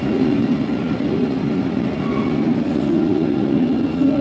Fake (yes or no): yes